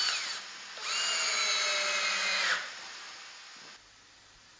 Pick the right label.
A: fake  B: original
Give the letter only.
B